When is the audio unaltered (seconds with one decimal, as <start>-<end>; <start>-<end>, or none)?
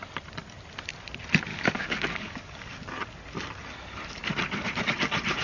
0.0-1.5; 2.7-5.4